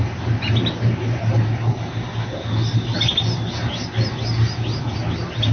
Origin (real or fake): real